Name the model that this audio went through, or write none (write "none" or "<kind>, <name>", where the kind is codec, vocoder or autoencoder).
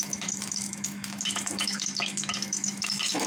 autoencoder, DAC-VAE